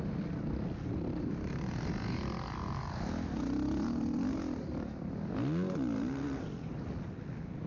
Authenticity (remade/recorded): recorded